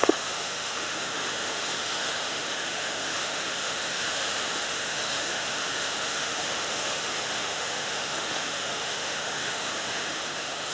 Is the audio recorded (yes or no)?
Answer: no